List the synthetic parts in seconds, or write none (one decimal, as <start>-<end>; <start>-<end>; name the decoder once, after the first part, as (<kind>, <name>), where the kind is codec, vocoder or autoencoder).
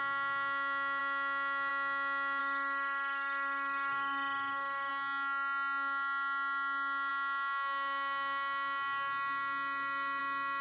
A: 2.4-4.9 (autoencoder, DAC-VAE)